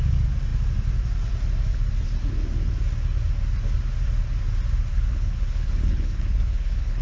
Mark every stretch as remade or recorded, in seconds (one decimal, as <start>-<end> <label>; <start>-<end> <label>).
0.0-4.9 recorded; 4.9-7.0 remade